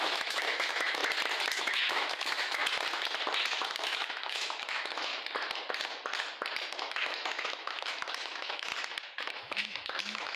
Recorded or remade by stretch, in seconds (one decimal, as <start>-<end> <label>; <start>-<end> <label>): 0.0-1.0 remade; 1.0-1.6 recorded; 1.6-2.6 remade; 2.6-3.8 recorded; 3.8-5.1 remade; 5.1-6.7 recorded; 6.7-8.7 remade; 8.7-9.3 recorded; 9.3-10.4 remade